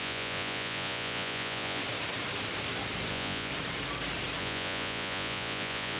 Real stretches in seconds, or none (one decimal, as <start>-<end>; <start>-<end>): 1.8-3.1; 3.5-4.4